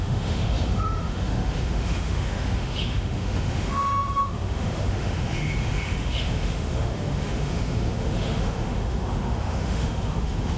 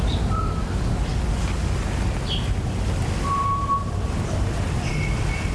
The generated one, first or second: first